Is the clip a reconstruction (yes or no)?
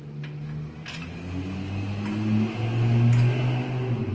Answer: no